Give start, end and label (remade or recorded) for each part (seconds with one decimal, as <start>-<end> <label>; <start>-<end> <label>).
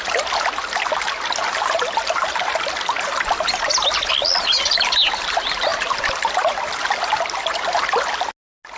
0.0-8.8 recorded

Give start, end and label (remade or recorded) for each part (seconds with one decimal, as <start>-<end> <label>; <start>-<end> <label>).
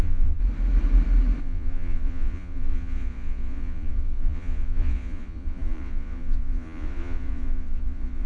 0.0-0.4 remade; 0.4-1.4 recorded; 1.4-8.3 remade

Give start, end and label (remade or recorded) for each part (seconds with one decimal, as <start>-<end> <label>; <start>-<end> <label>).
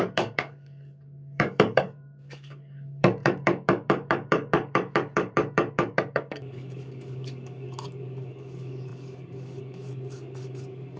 0.0-11.0 remade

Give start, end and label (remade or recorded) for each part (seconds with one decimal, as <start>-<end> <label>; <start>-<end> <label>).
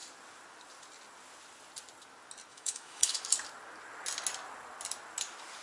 0.0-2.5 recorded; 2.5-3.2 remade; 3.2-5.6 recorded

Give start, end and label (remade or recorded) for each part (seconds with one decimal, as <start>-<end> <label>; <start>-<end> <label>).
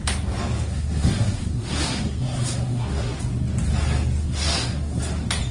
0.0-0.7 recorded; 0.7-3.2 remade; 3.2-4.2 recorded; 4.2-5.0 remade; 5.0-5.5 recorded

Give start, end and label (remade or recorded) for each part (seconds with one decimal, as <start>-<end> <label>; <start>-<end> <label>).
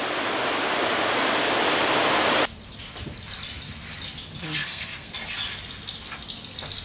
0.0-4.6 recorded; 4.6-5.1 remade; 5.1-6.8 recorded